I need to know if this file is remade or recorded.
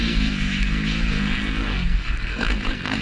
remade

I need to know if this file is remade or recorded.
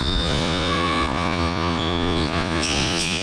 remade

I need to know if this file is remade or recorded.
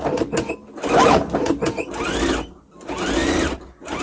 recorded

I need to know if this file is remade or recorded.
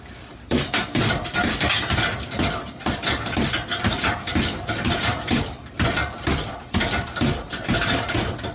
recorded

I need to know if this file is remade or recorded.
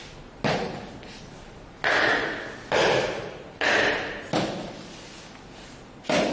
recorded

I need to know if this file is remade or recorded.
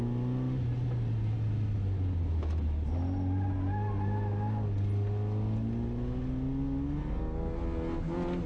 recorded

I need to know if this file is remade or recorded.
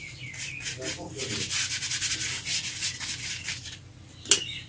recorded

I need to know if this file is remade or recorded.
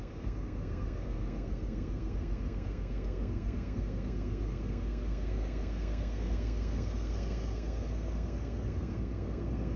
remade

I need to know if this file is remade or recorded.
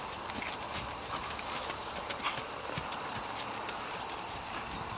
recorded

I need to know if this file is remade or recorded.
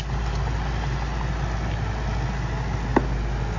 recorded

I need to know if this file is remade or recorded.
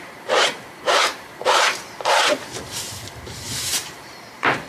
remade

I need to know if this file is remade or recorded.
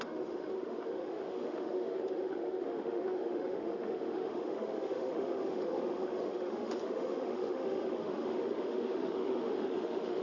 remade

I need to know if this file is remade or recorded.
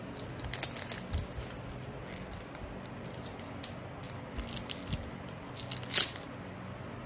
recorded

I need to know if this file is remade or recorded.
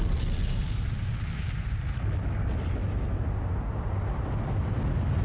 recorded